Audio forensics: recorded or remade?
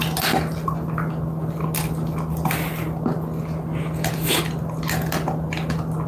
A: recorded